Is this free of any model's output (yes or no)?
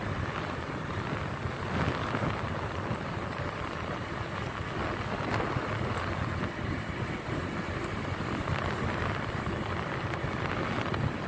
yes